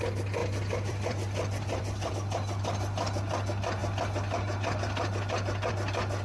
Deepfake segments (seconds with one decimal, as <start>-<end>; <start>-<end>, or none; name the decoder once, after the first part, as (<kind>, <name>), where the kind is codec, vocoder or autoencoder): 0.4-2.1 (vocoder, BigVGAN v2)